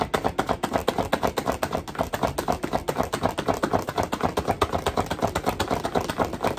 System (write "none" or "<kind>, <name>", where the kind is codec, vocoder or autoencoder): none